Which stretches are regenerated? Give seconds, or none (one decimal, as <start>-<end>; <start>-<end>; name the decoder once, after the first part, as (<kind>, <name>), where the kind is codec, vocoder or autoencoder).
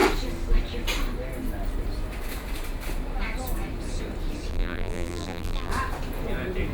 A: 4.5-5.7 (vocoder, BigVGAN v2)